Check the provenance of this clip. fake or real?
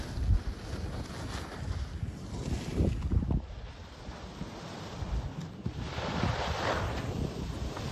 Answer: real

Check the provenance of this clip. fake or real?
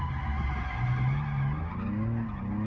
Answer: real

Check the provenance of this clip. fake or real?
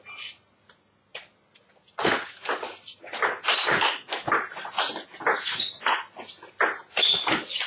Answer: real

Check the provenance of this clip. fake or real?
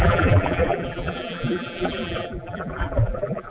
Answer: fake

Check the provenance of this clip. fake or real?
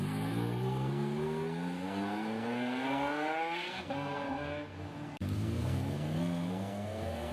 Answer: fake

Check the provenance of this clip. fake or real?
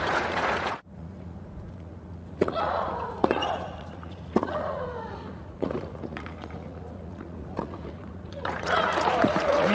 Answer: fake